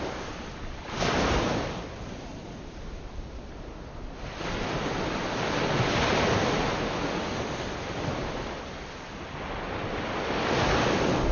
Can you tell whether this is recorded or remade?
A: recorded